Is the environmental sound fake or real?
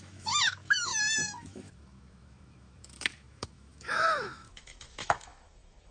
fake